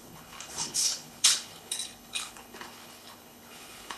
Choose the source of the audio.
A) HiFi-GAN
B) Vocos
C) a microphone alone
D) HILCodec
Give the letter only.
D